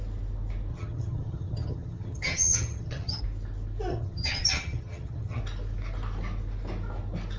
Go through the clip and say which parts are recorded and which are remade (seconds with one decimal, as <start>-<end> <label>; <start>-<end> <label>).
0.0-0.7 recorded; 0.7-3.2 remade; 3.2-3.9 recorded; 3.9-5.4 remade; 5.4-7.4 recorded